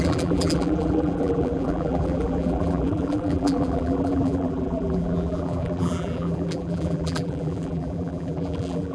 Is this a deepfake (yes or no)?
yes